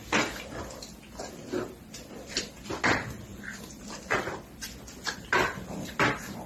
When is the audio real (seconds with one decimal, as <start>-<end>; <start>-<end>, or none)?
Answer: 0.0-6.5